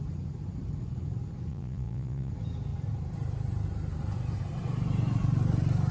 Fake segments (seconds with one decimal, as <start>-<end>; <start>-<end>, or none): 1.5-2.3